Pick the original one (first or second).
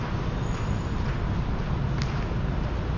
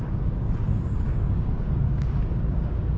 first